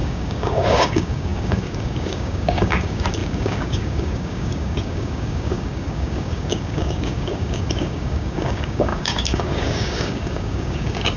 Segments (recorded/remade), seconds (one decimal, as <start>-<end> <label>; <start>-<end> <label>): 0.0-11.2 remade